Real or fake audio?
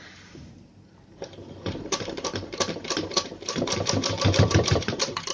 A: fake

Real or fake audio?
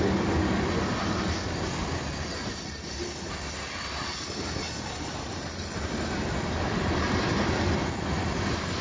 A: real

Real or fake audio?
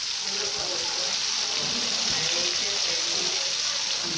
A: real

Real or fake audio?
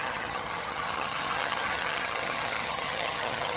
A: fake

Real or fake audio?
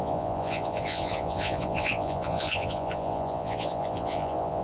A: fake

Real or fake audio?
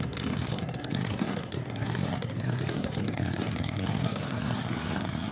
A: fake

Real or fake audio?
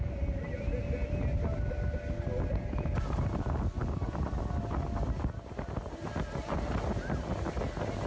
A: real